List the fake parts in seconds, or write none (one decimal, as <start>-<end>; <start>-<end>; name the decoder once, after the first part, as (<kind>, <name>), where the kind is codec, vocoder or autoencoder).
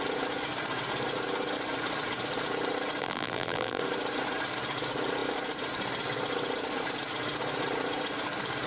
3.0-3.8 (vocoder, BigVGAN v2)